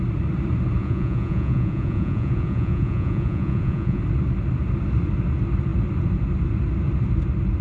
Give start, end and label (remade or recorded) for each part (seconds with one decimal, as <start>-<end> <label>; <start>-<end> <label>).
0.0-0.8 recorded; 0.8-4.0 remade; 4.0-7.6 recorded